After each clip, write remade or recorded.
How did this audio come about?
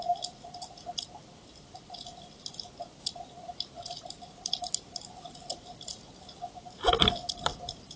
recorded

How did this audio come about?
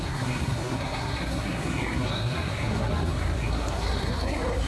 remade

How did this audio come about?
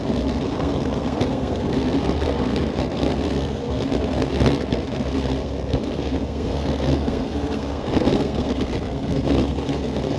remade